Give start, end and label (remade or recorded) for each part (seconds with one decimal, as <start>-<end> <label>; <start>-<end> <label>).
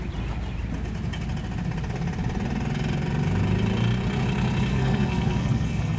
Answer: 0.0-4.7 recorded; 4.7-6.0 remade